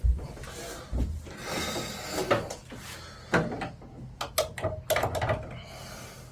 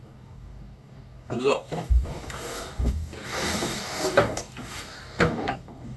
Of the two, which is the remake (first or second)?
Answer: second